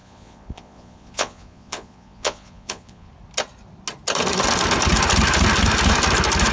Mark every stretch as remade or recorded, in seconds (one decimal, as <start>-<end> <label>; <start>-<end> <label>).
0.0-3.1 remade; 3.1-6.5 recorded